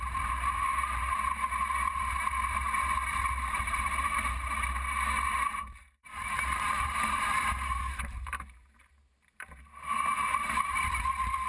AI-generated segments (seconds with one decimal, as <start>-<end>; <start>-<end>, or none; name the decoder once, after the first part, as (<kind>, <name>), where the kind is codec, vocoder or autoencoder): 5.8-10.9 (vocoder, BigVGAN v2)